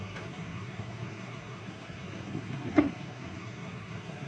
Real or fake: fake